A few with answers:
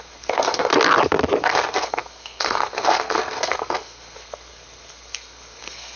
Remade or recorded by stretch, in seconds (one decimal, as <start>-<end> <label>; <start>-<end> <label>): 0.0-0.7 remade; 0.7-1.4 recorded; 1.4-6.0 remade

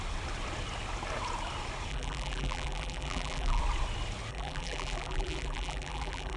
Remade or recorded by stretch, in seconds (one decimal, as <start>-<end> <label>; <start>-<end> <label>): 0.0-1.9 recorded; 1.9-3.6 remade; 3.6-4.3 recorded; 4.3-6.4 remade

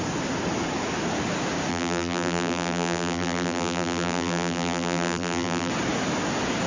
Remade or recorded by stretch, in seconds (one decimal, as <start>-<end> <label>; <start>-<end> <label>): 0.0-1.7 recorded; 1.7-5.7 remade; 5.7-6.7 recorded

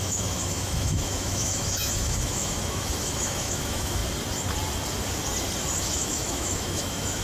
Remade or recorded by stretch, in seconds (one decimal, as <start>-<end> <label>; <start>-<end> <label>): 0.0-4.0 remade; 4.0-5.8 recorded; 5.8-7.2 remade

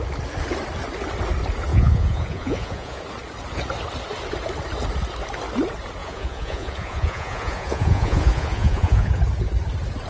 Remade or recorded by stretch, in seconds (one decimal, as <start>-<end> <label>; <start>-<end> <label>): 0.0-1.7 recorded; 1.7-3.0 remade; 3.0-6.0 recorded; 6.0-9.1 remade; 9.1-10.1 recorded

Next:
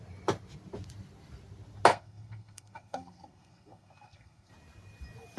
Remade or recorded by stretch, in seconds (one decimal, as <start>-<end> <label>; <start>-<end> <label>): 0.0-1.9 recorded; 1.9-4.5 remade; 4.5-5.4 recorded

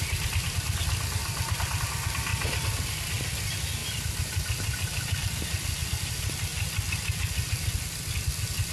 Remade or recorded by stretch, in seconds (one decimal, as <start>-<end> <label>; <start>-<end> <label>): 0.0-2.3 recorded; 2.3-2.9 remade; 2.9-3.8 recorded; 3.8-5.7 remade; 5.7-8.7 recorded

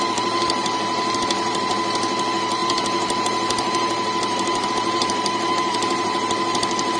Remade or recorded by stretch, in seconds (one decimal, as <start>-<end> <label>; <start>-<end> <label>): 0.0-7.0 remade